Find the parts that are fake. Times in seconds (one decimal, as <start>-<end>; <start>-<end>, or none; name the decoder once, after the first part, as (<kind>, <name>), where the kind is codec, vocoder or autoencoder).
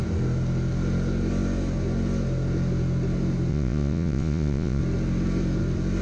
3.5-4.8 (vocoder, Vocos)